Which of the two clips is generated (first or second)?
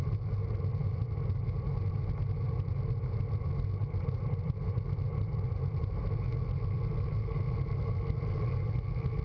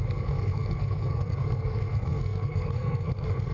second